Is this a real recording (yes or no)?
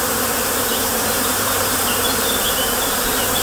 no